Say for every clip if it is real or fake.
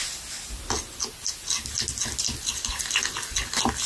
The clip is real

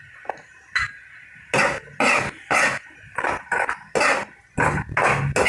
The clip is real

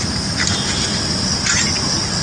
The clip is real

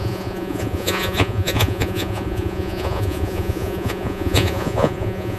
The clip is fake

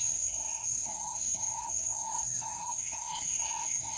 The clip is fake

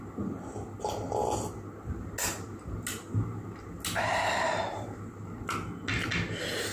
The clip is real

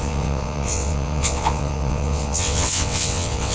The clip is fake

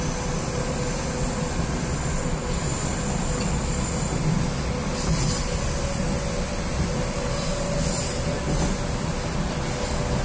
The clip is real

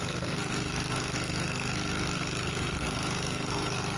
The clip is fake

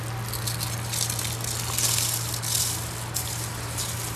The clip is real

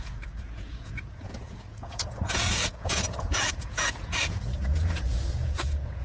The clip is fake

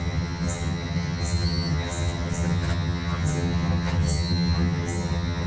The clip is fake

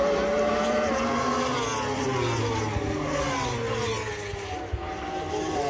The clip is real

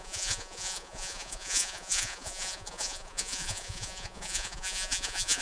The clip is fake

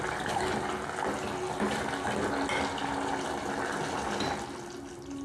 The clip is real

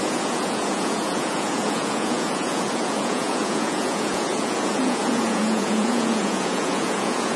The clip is fake